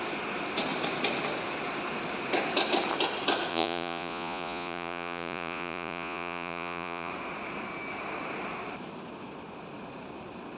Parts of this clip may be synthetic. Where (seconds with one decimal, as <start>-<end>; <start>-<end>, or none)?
3.5-7.1